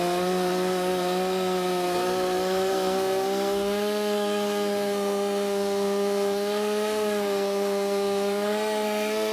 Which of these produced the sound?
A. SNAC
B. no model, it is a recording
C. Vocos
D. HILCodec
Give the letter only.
A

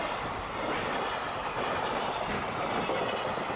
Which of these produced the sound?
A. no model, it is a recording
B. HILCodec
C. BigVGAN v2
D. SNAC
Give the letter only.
A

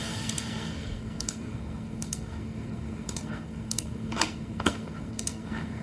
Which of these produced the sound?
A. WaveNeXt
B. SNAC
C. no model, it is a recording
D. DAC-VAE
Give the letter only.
B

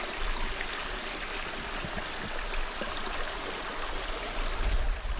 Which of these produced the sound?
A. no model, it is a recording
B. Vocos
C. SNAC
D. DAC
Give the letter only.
A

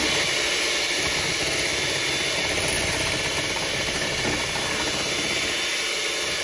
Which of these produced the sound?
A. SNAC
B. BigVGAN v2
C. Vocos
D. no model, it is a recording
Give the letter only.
D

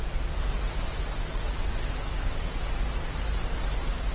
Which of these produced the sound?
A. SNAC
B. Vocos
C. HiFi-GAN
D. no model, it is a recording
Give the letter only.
D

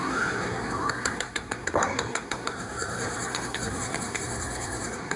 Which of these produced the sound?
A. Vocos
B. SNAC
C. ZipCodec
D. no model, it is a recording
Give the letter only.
B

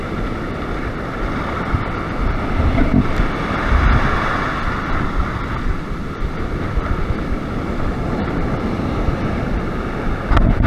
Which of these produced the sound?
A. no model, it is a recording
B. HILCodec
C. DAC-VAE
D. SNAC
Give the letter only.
A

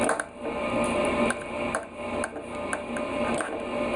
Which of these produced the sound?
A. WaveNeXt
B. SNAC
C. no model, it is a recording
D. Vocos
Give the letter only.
C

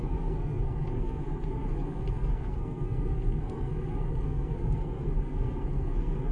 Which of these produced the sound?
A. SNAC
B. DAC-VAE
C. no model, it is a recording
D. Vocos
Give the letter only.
A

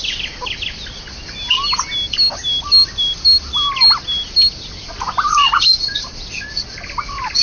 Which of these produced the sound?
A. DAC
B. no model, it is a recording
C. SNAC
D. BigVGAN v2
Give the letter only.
B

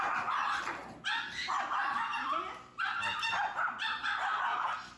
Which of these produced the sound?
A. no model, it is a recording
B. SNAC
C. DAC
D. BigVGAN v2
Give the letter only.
A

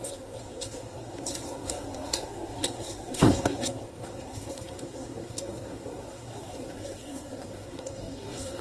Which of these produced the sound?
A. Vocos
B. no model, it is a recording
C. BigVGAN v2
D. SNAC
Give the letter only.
D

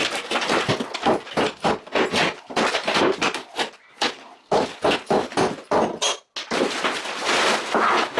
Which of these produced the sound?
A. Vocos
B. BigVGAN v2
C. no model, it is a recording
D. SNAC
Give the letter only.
C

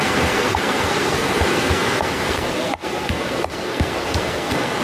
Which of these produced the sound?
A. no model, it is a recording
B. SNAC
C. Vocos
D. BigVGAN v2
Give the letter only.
B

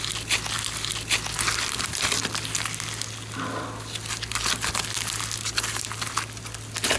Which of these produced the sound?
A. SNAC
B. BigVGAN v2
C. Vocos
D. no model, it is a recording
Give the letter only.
D